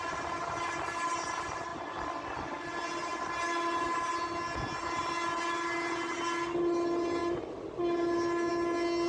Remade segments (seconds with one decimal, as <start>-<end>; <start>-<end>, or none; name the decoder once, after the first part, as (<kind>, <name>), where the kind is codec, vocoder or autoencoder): none